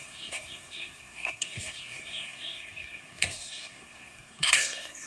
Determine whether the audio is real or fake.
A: fake